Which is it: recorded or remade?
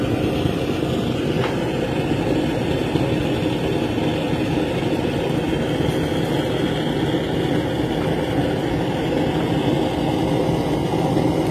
recorded